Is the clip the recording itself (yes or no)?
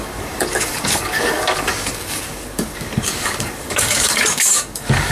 no